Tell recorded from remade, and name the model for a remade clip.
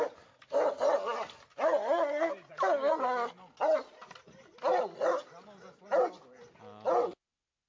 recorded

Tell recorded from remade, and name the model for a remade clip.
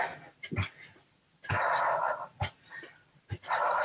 recorded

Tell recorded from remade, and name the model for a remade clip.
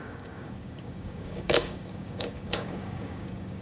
remade, codec, DAC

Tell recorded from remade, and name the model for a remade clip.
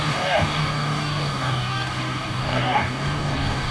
remade, codec, DAC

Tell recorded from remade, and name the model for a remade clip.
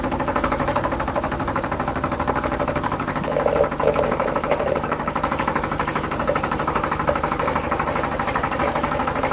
remade, codec, DAC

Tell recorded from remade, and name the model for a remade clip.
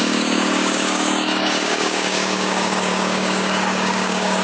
remade, codec, DAC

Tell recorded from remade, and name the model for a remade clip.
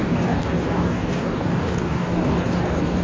remade, codec, DAC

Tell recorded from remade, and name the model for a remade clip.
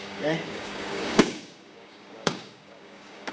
remade, codec, DAC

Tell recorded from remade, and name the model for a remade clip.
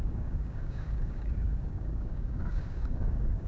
remade, codec, DAC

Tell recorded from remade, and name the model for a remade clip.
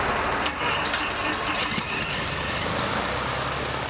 recorded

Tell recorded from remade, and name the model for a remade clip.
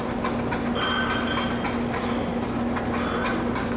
recorded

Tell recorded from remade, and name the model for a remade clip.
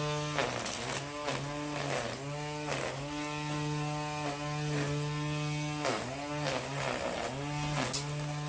recorded